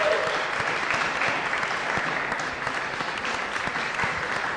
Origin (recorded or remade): recorded